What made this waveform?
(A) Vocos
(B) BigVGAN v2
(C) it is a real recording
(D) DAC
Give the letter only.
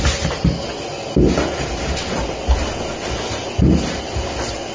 C